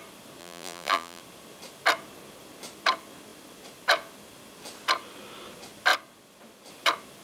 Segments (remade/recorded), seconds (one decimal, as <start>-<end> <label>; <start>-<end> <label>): 0.0-0.4 recorded; 0.4-1.2 remade; 1.2-7.2 recorded